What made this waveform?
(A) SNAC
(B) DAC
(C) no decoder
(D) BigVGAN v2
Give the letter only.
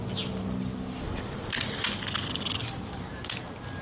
C